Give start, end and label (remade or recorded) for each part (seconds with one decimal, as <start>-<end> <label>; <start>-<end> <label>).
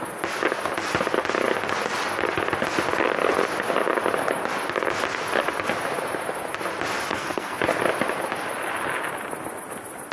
0.0-7.1 recorded; 7.1-7.6 remade; 7.6-10.1 recorded